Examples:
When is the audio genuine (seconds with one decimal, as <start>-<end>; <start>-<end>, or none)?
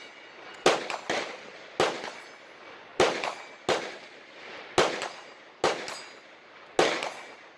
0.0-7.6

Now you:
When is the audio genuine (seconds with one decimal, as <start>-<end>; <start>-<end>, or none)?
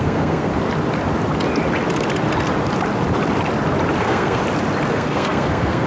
0.5-4.0; 4.4-4.9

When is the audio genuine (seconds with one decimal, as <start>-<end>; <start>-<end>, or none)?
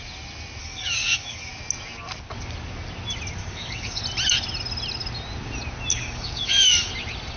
0.0-0.6; 1.5-3.4; 4.0-5.9; 6.9-7.4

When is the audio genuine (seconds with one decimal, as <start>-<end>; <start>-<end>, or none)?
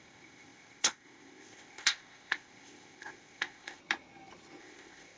3.8-4.6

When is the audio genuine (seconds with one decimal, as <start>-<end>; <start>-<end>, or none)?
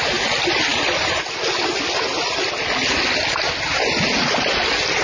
0.0-5.0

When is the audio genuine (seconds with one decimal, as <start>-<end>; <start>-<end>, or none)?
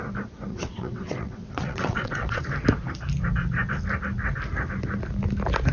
0.0-0.5; 2.4-5.7